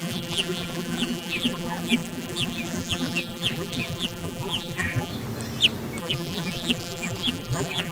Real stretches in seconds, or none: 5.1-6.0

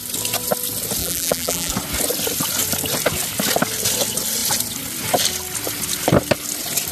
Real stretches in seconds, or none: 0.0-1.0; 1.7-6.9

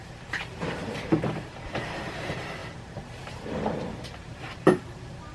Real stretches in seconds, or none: none

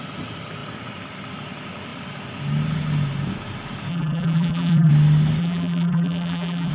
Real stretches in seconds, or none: 0.0-3.9; 4.9-5.4

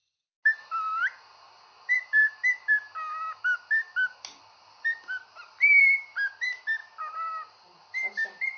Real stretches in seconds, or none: 0.0-1.0; 2.2-4.4; 6.8-7.6